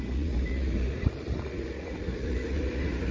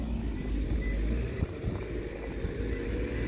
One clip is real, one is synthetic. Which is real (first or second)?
second